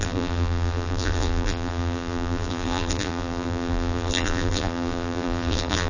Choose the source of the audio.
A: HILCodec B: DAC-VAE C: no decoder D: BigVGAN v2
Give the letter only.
D